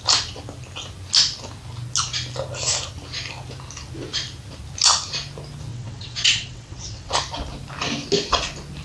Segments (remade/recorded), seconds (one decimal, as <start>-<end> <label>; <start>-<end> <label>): 0.0-5.7 recorded; 5.7-7.1 remade; 7.1-8.8 recorded